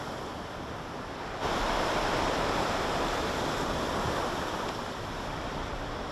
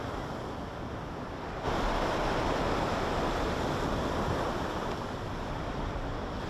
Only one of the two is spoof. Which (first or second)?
first